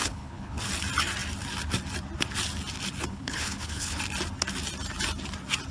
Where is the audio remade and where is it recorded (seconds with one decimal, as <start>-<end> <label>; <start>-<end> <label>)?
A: 0.0-0.7 remade; 0.7-3.1 recorded; 3.1-4.0 remade; 4.0-5.7 recorded